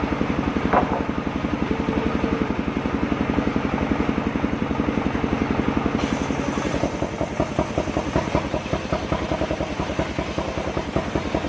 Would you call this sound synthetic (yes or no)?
no